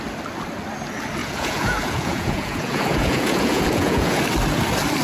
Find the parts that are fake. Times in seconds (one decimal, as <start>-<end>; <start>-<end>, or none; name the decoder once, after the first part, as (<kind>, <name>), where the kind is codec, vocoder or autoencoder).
1.2-4.2 (vocoder, Vocos)